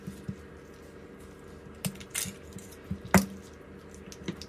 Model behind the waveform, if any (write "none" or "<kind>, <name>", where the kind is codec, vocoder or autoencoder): none